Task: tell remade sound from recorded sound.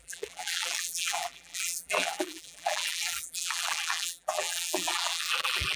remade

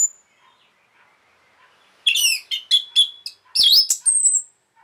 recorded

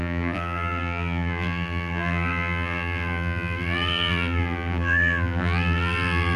remade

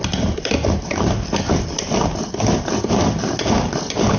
remade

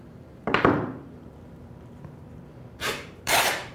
remade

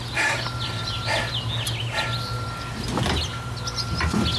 recorded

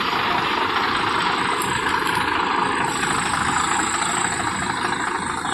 recorded